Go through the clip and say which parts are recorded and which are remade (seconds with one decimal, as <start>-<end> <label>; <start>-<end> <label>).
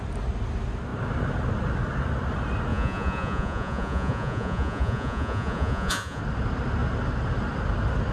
0.0-2.7 recorded; 2.7-6.2 remade; 6.2-8.1 recorded